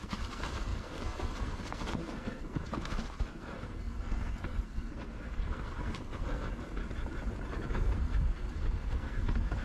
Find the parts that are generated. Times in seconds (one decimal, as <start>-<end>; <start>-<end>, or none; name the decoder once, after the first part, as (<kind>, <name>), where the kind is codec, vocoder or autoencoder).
0.0-6.8 (codec, SNAC); 7.5-9.6